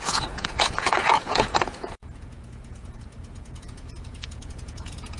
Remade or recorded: remade